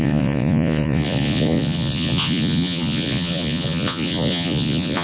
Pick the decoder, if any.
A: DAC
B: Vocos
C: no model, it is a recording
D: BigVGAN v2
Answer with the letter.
B